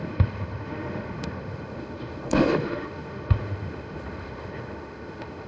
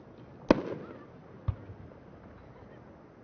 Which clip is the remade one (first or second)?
first